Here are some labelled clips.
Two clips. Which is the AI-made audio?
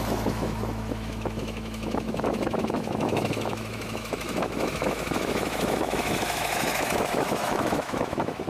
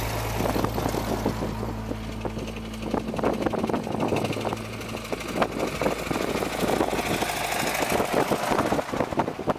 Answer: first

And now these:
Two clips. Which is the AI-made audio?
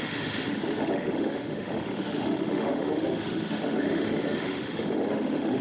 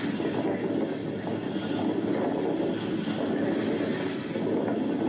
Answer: first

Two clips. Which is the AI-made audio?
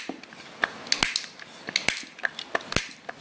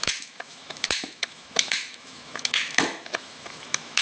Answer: second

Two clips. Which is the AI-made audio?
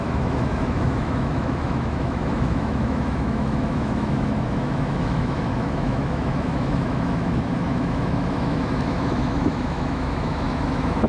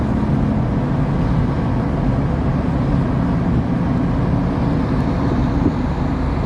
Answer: first